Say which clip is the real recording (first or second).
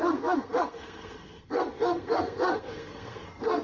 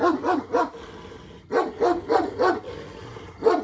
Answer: second